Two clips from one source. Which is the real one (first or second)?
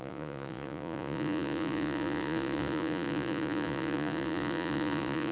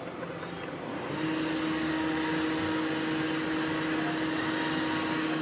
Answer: second